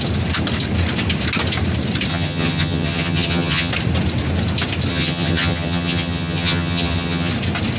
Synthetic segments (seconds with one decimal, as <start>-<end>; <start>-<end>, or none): 2.1-3.7; 4.9-7.3